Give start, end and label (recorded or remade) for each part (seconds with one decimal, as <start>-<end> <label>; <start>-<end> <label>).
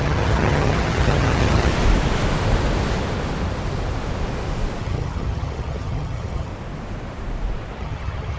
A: 0.0-1.7 remade; 1.7-4.8 recorded; 4.8-6.5 remade; 6.5-7.8 recorded; 7.8-8.4 remade